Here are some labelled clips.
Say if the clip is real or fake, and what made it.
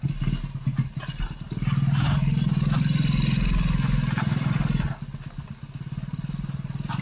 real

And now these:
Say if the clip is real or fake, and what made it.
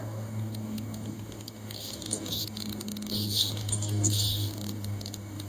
fake, codec, DAC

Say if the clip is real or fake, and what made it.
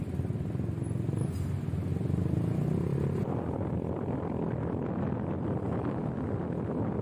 real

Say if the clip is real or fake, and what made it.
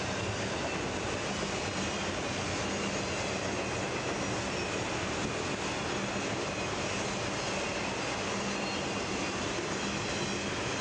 real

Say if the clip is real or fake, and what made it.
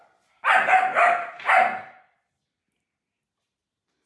real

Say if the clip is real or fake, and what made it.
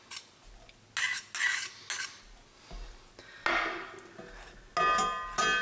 real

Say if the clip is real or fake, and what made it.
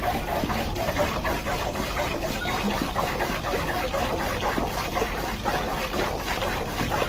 real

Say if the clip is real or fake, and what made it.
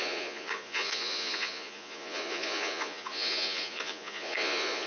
fake, vocoder, Vocos